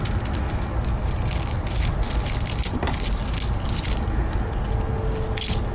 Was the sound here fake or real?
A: real